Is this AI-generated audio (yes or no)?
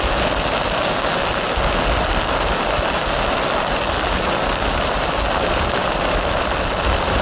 no